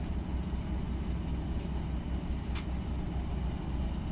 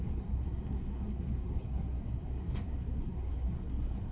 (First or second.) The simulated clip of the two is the second